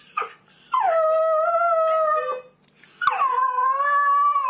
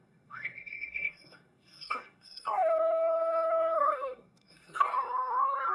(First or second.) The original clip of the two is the first